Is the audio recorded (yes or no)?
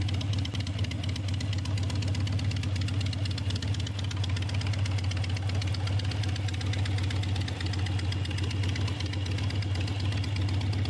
yes